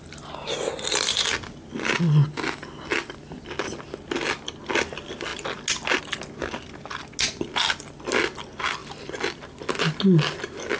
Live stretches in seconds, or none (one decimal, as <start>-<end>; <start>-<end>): 0.0-10.8